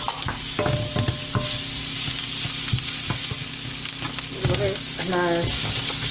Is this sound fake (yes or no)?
no